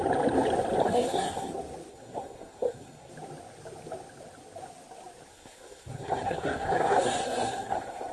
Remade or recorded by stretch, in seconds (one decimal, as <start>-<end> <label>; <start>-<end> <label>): 0.0-0.8 recorded; 0.8-1.5 remade; 1.5-1.9 recorded; 1.9-3.1 remade; 3.1-5.3 recorded; 5.3-8.1 remade